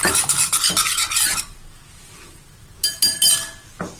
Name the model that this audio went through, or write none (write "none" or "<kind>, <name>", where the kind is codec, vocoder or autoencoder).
none